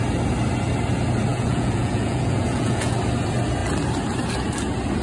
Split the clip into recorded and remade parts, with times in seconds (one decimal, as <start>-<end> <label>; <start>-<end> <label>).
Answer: 0.0-1.3 recorded; 1.3-3.0 remade; 3.0-5.0 recorded

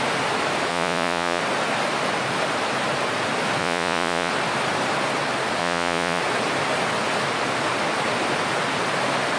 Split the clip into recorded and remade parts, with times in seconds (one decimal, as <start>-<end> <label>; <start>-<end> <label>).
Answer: 0.0-0.7 recorded; 0.7-1.4 remade; 1.4-3.6 recorded; 3.6-4.3 remade; 4.3-5.6 recorded; 5.6-6.2 remade; 6.2-9.4 recorded